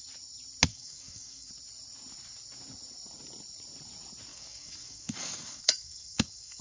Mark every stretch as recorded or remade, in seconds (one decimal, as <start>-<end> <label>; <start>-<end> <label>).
0.0-0.7 recorded; 0.7-1.5 remade; 1.5-4.3 recorded; 4.3-6.6 remade